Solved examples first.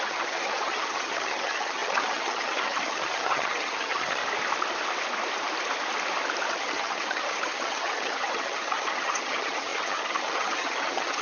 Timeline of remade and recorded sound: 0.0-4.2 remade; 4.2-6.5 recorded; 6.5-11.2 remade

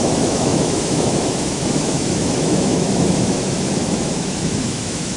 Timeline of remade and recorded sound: 0.0-5.2 remade

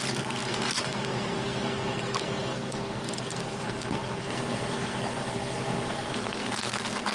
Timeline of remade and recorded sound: 0.0-7.1 remade

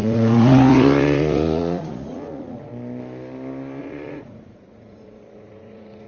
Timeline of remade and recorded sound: 0.0-2.7 remade; 2.7-3.8 recorded; 3.8-6.1 remade